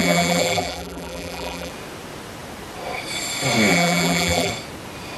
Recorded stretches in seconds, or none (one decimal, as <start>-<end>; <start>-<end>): 1.7-3.7; 4.5-5.2

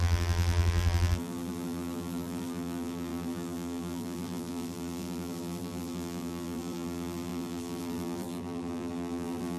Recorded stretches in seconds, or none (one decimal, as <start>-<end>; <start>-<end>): none

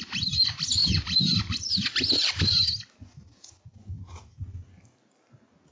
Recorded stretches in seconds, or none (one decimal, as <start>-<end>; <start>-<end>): 0.0-0.8; 2.4-5.7

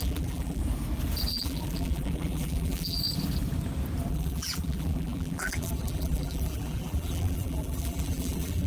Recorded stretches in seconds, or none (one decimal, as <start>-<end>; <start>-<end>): 0.6-1.3; 3.0-4.1

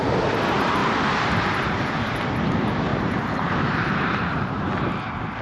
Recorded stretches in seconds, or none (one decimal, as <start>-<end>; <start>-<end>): 0.0-0.8; 1.8-2.9; 4.6-5.4

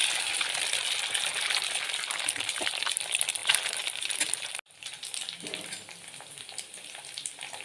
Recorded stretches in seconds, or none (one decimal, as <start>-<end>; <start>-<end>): 0.0-2.2; 3.4-4.8

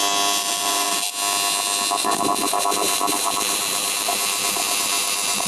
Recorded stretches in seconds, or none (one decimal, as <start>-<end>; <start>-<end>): 0.0-0.4; 1.1-2.0